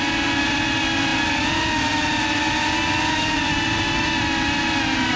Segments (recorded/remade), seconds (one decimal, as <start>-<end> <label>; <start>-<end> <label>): 0.0-5.2 recorded